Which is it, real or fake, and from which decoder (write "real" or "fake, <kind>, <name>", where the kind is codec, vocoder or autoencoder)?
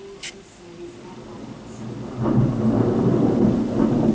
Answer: real